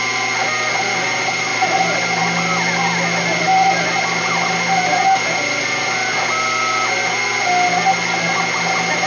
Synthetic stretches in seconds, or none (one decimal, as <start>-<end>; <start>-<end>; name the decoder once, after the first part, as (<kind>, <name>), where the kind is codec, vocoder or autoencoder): none